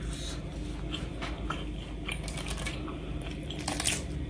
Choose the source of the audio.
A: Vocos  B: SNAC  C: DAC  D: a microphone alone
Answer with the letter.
D